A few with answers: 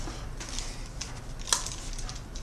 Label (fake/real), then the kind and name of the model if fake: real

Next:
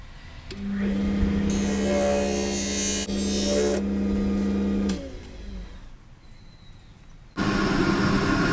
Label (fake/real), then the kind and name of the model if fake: real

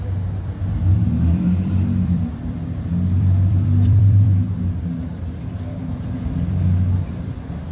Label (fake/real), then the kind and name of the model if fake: fake, vocoder, BigVGAN v2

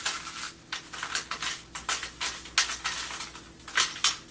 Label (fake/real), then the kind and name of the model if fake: real